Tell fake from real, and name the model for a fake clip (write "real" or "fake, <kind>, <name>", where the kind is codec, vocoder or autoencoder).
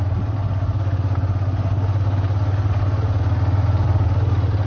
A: real